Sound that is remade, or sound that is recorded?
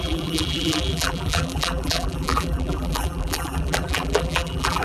remade